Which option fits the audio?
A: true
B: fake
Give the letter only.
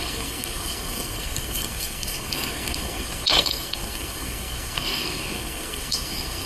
B